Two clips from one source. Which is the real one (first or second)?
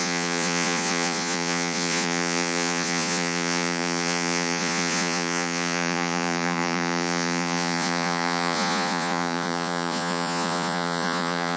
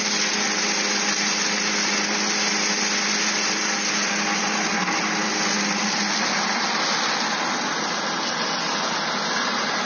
second